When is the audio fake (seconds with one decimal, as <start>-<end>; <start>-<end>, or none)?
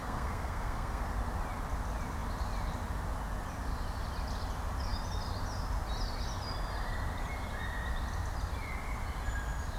0.0-1.0